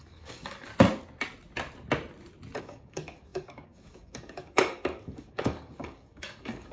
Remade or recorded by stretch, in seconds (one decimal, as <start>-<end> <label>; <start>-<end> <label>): 0.0-0.7 remade; 0.7-2.6 recorded; 2.6-6.7 remade